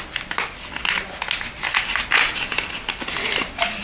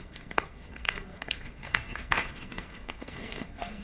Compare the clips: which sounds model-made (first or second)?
second